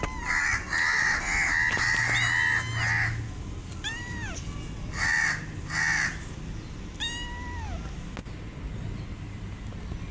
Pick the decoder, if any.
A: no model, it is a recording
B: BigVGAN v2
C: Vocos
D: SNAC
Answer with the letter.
A